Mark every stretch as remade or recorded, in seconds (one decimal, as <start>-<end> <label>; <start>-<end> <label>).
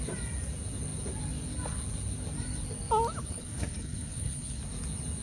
0.0-3.2 recorded; 3.2-4.6 remade; 4.6-5.2 recorded